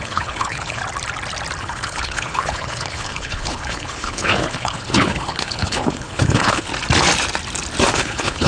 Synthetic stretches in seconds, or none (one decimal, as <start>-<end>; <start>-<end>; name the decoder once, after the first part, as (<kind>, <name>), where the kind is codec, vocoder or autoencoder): 0.0-0.8 (codec, HILCodec); 1.6-6.7; 7.9-8.5